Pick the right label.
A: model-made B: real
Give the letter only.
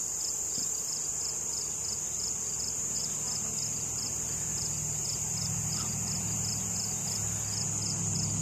B